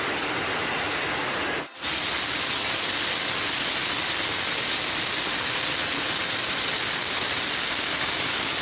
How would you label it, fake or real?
real